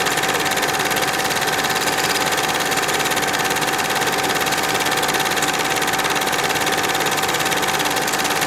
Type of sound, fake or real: real